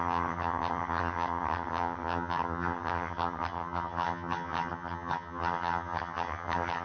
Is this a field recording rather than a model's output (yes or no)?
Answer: no